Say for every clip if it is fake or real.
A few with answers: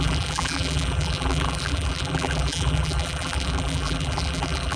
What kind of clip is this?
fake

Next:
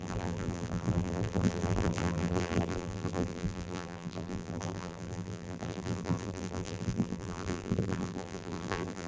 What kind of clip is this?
fake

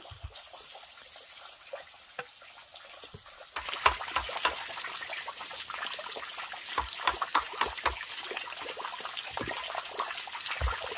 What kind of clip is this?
real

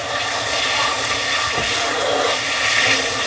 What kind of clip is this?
real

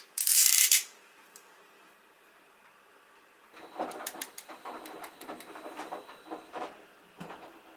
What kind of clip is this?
fake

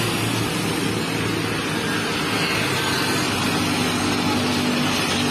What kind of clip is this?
real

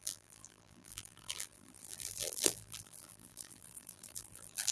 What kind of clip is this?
fake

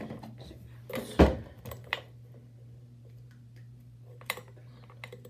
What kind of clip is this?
real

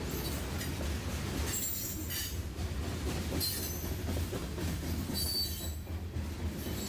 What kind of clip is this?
real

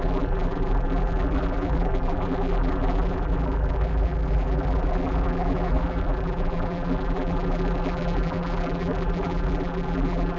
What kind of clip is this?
fake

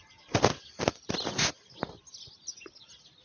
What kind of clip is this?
real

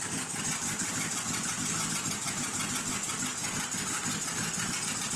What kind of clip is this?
fake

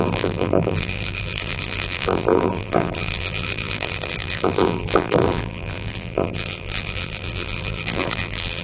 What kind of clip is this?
fake